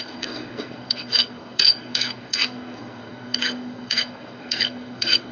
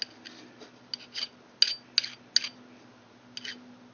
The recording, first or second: second